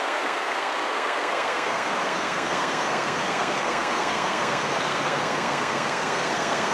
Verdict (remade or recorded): remade